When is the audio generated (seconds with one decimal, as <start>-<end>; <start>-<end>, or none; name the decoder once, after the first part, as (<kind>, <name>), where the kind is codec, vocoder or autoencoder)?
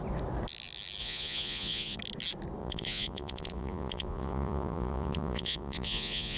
1.0-2.0 (vocoder, Vocos); 2.6-6.4